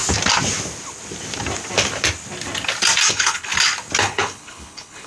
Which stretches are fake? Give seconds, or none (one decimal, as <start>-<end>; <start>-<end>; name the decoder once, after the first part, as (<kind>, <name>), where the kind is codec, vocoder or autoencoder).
3.1-3.5 (codec, HILCodec); 4.0-5.1